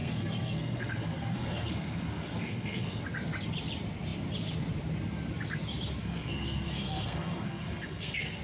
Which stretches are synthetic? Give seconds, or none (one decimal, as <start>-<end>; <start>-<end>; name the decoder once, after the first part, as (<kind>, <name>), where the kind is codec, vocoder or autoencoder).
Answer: 0.0-3.0 (codec, SNAC); 6.0-8.4

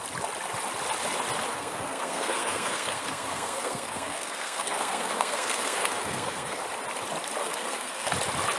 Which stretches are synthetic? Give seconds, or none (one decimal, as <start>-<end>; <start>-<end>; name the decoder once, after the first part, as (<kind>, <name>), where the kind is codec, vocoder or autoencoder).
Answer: 1.5-6.6 (codec, SNAC); 7.4-8.1

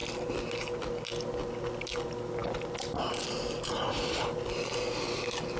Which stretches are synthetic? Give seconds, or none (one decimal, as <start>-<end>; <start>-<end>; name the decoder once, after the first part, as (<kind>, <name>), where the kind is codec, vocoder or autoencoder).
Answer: none

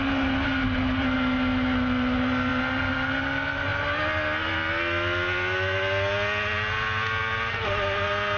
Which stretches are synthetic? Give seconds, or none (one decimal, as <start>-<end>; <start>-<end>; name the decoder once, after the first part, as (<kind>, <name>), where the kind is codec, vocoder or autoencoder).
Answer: none

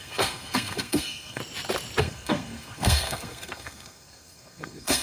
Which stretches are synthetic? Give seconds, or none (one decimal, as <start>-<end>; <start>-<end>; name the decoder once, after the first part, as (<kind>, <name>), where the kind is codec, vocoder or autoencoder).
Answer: 0.0-1.4 (codec, SNAC); 2.0-5.0